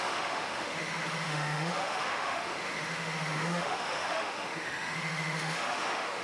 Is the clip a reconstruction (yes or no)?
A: yes